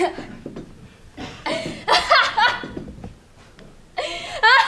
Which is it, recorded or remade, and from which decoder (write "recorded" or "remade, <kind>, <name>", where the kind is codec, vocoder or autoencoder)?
recorded